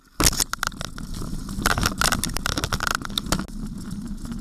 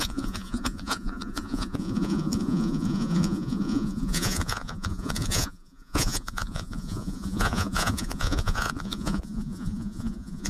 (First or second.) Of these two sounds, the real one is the first